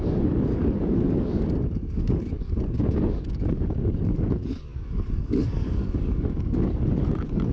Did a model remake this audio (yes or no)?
yes